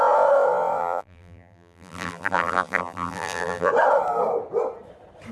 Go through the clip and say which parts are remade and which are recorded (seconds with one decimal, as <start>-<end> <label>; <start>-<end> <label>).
0.0-0.8 recorded; 0.8-3.7 remade; 3.7-5.3 recorded